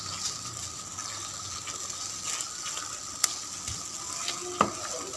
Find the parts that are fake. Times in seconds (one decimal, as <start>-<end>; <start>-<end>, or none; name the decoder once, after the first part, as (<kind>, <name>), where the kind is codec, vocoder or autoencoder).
none